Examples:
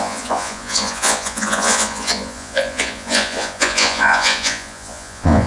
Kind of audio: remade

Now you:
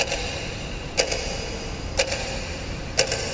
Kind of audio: recorded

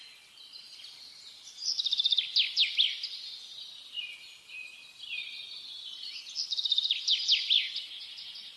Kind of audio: recorded